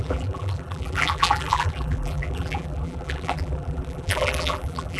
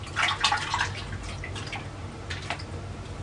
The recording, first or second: second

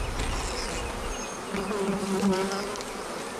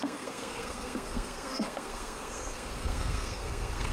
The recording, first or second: first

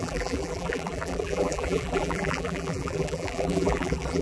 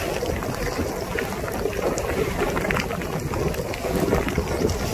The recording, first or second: second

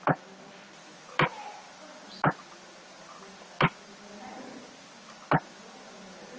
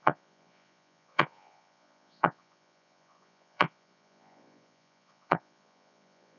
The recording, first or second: first